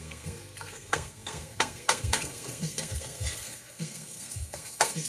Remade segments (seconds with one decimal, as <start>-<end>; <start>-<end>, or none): 0.0-5.1